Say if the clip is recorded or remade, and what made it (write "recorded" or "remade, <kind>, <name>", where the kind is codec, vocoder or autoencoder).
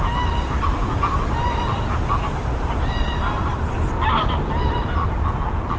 recorded